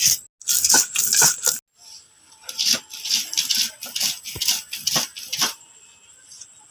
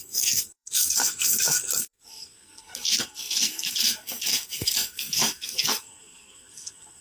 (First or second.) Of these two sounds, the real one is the first